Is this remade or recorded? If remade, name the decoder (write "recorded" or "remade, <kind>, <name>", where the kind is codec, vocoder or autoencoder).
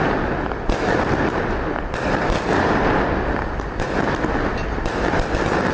recorded